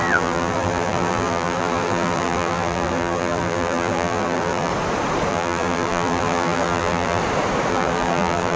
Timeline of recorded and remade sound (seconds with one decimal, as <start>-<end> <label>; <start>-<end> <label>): 0.0-4.7 remade; 4.7-5.3 recorded; 5.3-7.2 remade; 7.2-7.7 recorded; 7.7-8.6 remade